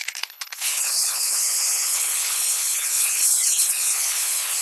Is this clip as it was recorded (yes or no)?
no